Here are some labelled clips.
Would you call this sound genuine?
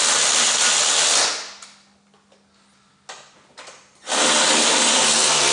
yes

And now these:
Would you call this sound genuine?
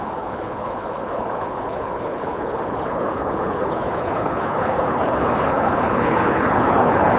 no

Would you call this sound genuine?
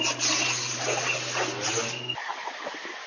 yes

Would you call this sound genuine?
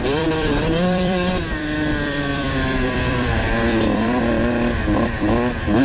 no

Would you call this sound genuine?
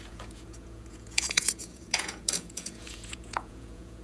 no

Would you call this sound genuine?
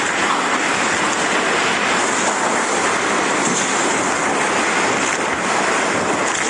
yes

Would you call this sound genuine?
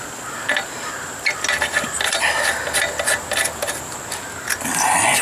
yes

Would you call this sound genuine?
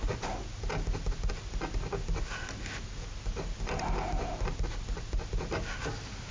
yes